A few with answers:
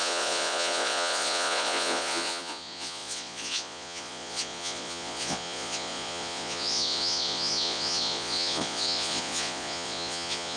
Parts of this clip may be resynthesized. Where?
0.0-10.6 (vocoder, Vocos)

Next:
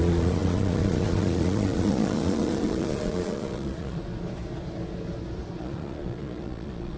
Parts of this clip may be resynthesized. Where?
0.0-4.0 (vocoder, Vocos); 5.6-7.0

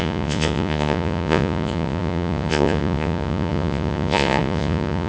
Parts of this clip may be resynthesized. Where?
0.0-5.1 (vocoder, Vocos)

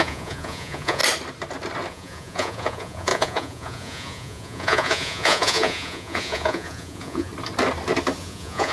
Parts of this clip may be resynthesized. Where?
0.0-1.0 (vocoder, Vocos); 1.9-7.3; 8.2-8.7

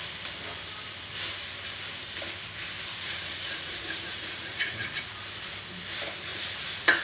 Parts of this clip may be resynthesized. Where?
2.9-5.2 (vocoder, Vocos); 6.3-7.0

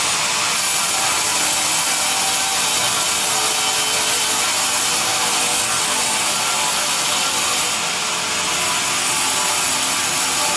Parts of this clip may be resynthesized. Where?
none